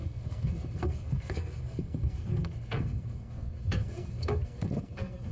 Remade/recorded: remade